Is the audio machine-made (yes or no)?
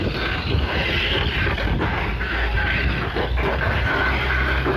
no